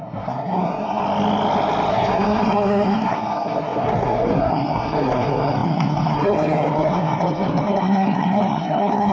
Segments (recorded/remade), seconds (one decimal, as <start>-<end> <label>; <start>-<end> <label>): 0.0-1.0 remade; 1.0-1.9 recorded; 1.9-9.1 remade